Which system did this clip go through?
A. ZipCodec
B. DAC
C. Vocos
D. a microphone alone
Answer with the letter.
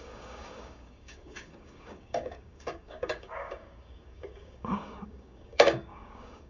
B